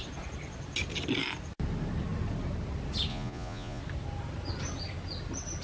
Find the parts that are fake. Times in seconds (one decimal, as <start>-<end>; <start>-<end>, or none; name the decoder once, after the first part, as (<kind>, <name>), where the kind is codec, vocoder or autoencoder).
3.1-3.8 (vocoder, Vocos)